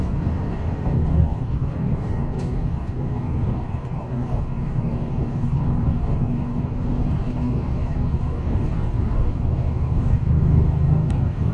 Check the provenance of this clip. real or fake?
fake